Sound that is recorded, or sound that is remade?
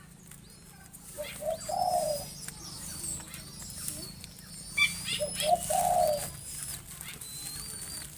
recorded